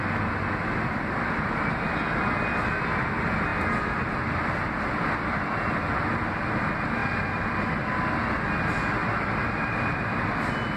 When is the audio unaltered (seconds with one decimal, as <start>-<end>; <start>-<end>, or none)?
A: 0.0-10.8